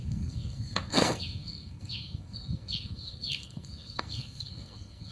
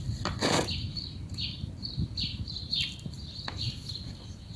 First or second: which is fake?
first